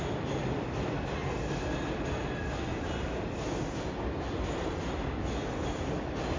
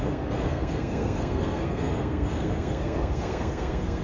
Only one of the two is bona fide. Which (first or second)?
first